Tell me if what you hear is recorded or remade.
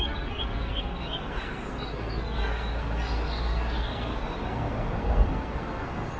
remade